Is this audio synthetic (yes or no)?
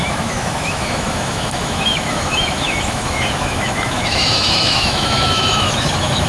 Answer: yes